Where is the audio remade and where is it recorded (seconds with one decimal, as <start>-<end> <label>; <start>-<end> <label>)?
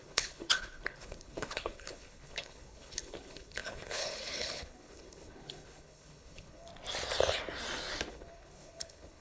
0.0-6.7 remade; 6.7-8.1 recorded; 8.1-9.2 remade